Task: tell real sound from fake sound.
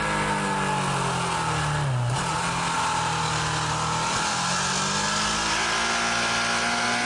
real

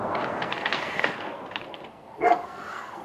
fake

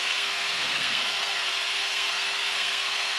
fake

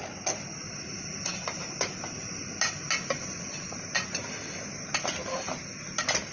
real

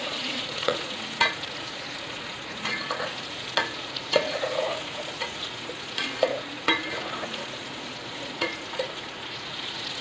fake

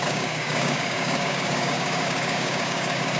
fake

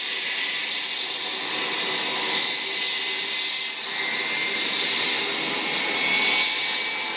real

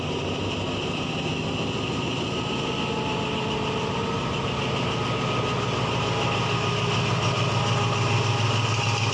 real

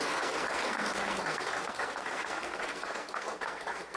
fake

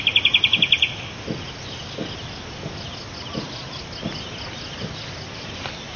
real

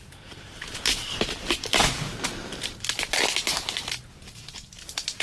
real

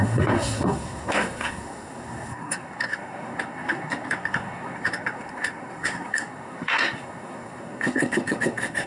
fake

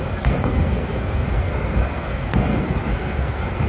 fake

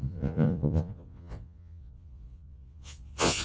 fake